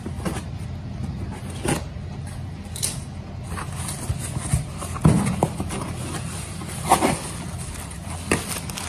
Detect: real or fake real